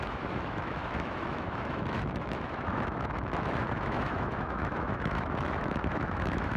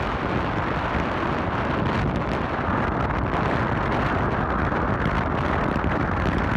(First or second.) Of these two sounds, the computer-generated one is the first